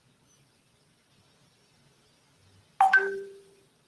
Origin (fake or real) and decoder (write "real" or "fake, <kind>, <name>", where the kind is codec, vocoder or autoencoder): real